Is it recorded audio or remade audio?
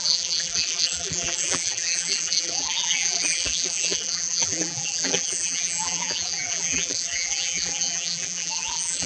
remade